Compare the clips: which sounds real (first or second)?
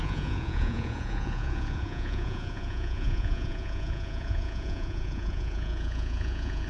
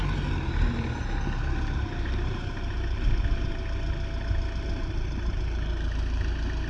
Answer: second